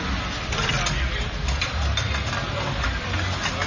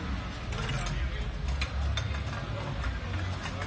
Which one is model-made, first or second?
first